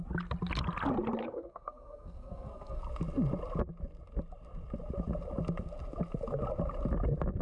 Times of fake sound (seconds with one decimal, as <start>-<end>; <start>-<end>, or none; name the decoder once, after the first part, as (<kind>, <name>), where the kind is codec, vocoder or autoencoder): 1.2-2.8 (codec, SNAC)